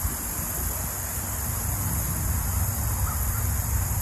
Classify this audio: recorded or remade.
recorded